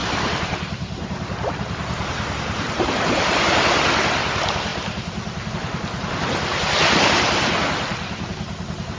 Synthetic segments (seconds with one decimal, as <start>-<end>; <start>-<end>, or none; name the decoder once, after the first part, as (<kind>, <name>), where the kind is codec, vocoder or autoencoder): 0.0-3.5 (vocoder, BigVGAN v2); 6.5-7.5